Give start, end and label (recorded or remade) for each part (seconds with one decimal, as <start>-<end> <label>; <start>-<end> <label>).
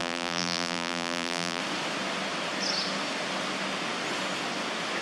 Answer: 0.0-1.6 remade; 1.6-5.0 recorded